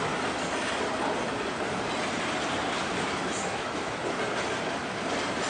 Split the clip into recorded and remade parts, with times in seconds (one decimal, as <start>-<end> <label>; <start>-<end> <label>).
0.0-3.5 recorded; 3.5-4.0 remade; 4.0-5.5 recorded

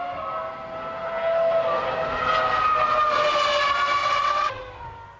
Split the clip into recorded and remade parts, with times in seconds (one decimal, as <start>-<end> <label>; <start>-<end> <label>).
0.0-4.0 recorded; 4.0-4.6 remade; 4.6-5.2 recorded